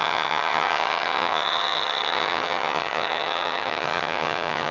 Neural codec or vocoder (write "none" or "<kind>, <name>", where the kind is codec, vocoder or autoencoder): vocoder, HiFi-GAN